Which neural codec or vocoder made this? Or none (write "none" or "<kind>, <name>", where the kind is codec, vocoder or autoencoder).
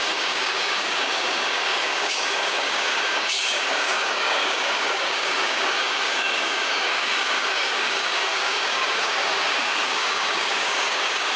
codec, DAC